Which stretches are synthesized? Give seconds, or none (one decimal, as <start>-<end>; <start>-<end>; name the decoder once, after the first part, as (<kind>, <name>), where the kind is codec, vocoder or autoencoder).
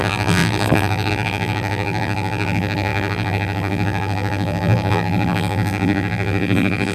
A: 0.0-6.9 (vocoder, BigVGAN v2)